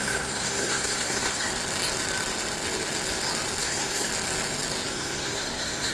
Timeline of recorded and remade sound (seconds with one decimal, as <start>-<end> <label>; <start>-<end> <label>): 0.0-1.5 remade; 1.5-3.6 recorded; 3.6-4.1 remade; 4.1-4.9 recorded; 4.9-5.9 remade